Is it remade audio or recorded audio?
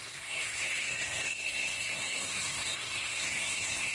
remade